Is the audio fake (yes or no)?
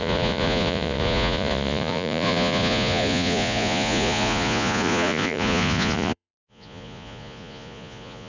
yes